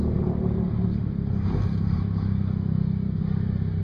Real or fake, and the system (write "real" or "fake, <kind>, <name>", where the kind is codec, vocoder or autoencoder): real